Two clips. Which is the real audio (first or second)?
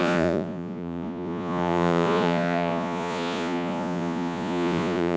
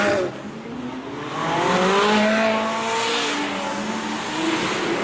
second